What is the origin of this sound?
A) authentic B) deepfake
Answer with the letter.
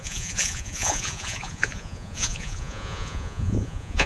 B